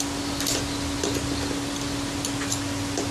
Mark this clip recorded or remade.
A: recorded